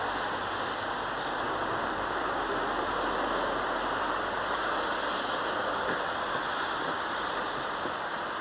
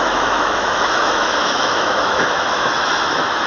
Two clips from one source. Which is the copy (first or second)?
second